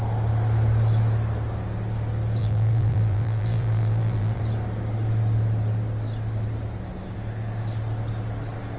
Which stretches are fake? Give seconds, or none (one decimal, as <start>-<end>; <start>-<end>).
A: 2.4-4.4